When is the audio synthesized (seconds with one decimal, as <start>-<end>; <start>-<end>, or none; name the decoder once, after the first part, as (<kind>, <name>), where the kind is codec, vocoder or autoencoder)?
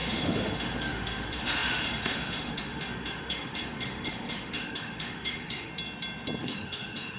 0.0-5.7 (autoencoder, DAC-VAE); 6.4-7.2